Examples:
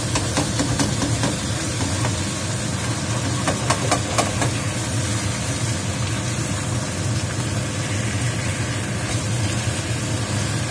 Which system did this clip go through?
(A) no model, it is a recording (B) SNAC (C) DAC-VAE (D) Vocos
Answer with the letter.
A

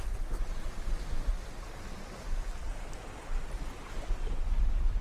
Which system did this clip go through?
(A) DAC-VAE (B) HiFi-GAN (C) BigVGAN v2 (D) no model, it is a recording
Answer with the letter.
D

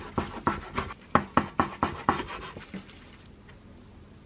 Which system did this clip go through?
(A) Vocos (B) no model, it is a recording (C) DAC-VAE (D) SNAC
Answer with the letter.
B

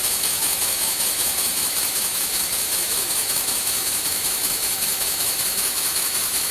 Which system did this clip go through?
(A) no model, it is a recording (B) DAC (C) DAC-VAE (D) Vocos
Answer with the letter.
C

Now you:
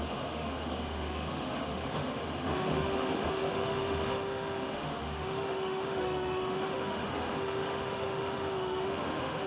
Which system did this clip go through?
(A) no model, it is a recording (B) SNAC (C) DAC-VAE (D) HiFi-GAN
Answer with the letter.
C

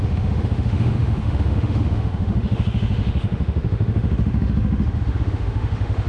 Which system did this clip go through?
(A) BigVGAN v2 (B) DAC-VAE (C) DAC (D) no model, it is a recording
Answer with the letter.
B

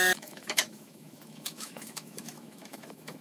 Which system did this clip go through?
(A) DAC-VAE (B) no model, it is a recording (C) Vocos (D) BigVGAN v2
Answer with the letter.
A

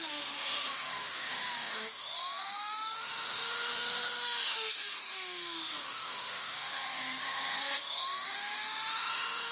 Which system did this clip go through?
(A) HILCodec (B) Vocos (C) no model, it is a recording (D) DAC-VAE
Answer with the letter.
D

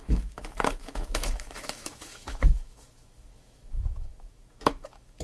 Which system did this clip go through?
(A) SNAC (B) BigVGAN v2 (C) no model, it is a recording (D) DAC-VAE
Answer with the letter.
D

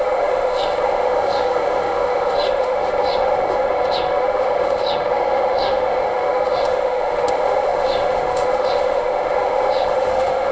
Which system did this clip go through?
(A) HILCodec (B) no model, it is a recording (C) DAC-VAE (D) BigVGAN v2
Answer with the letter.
C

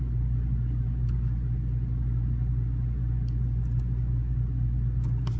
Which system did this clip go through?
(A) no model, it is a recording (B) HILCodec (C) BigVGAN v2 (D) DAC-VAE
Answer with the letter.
A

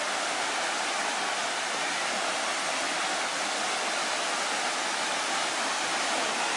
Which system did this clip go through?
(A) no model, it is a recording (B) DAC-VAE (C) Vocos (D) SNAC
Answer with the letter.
A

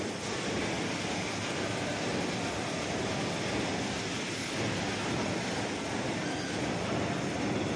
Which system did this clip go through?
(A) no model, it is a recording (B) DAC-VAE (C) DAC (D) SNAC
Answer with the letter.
A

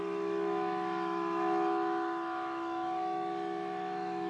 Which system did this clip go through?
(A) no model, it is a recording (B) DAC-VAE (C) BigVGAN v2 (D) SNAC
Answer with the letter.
B